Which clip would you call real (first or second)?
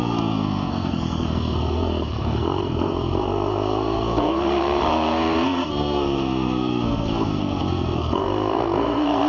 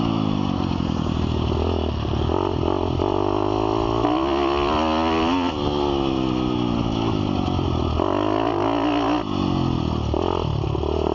second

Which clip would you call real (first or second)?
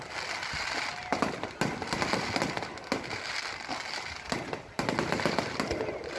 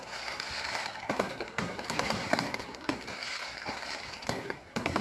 first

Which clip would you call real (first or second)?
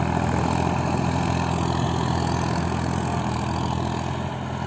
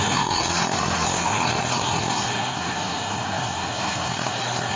first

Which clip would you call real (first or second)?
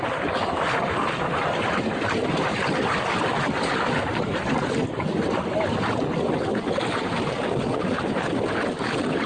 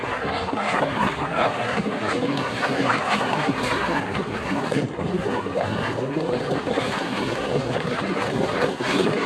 first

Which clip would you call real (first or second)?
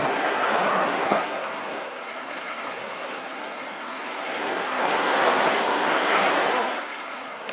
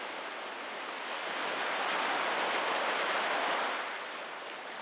second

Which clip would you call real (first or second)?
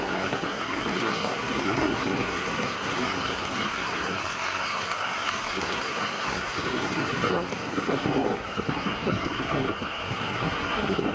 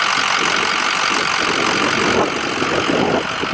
second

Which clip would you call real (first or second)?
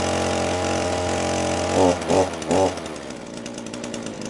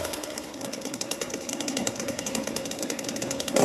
first